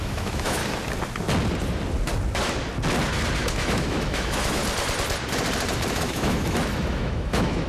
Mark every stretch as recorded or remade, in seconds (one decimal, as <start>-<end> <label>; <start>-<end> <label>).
0.0-0.6 remade; 0.6-3.5 recorded; 3.5-4.6 remade; 4.6-5.9 recorded; 5.9-7.7 remade